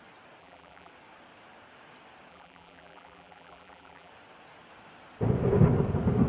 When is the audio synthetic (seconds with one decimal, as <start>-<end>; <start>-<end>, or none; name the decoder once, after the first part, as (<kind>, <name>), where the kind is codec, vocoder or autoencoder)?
0.4-0.9 (vocoder, BigVGAN v2); 2.3-4.1